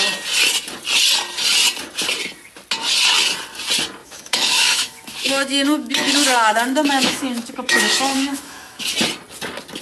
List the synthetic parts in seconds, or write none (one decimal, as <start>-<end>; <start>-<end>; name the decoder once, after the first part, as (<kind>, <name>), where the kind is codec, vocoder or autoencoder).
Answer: 4.0-8.9 (autoencoder, DAC-VAE)